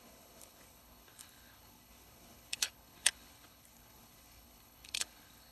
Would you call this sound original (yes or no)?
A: no